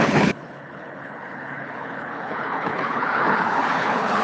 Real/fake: fake